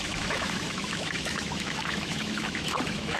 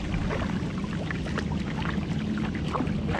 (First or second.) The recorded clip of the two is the second